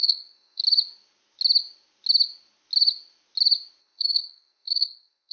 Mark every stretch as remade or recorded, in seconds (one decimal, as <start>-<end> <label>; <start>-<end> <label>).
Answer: 0.0-0.6 remade; 0.6-3.8 recorded; 3.8-5.3 remade